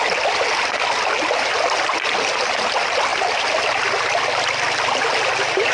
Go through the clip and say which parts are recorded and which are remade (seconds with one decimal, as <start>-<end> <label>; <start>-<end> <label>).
0.0-5.7 recorded